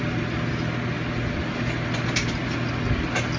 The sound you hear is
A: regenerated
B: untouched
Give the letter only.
B